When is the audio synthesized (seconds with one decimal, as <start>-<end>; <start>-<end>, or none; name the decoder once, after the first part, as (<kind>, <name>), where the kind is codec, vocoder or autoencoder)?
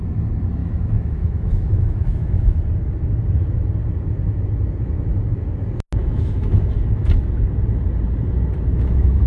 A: 0.6-2.6 (autoencoder, DAC-VAE); 6.0-6.6; 8.7-9.3